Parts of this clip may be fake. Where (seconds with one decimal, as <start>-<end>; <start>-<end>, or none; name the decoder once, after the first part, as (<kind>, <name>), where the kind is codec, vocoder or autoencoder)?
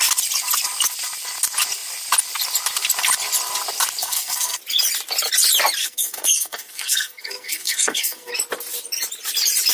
4.0-4.6 (codec, SNAC); 5.8-8.3